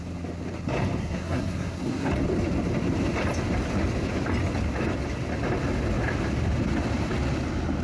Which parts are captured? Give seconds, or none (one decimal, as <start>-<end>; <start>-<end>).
0.0-1.0; 2.1-7.8